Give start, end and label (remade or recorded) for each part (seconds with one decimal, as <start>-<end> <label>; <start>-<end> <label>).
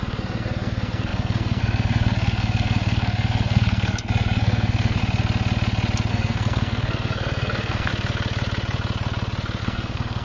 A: 0.0-5.0 remade; 5.0-6.1 recorded; 6.1-7.9 remade; 7.9-9.6 recorded; 9.6-10.2 remade